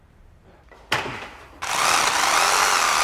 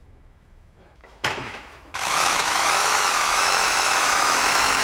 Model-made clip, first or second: second